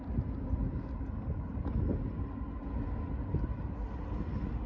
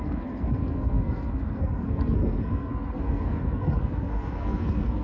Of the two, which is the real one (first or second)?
first